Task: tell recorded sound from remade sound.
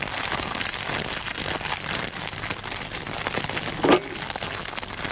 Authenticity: recorded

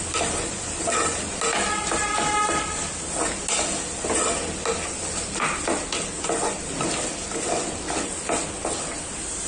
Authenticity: recorded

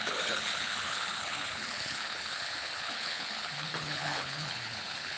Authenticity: remade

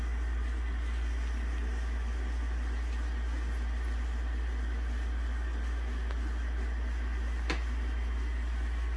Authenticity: recorded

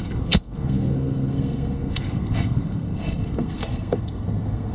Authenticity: remade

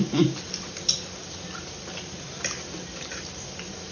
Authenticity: recorded